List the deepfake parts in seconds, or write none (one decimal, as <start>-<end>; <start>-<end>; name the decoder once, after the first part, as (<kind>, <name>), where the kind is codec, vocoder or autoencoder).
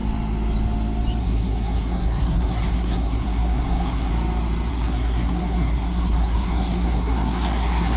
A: 1.2-4.1 (codec, SNAC); 4.7-8.0